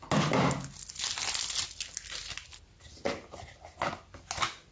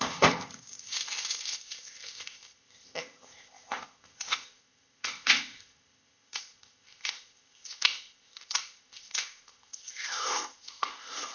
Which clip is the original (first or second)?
first